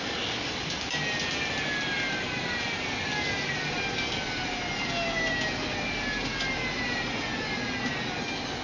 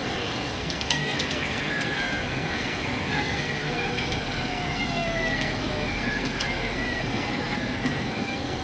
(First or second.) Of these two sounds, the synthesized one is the second